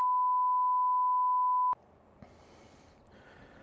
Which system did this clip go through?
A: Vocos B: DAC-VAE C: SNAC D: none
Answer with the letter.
D